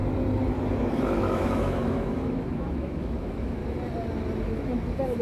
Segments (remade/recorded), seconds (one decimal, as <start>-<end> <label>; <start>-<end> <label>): 0.0-1.0 recorded; 1.0-3.6 remade; 3.6-4.5 recorded; 4.5-5.2 remade